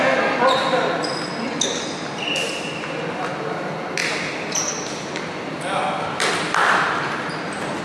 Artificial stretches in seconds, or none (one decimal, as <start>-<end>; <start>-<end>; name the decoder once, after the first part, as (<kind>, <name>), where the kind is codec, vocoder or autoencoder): 6.6-7.8 (vocoder, BigVGAN v2)